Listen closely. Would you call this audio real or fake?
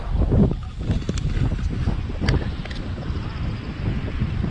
real